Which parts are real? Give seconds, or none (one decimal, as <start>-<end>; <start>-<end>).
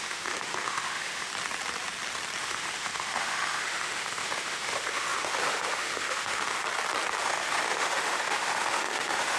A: 1.3-2.4; 6.6-7.2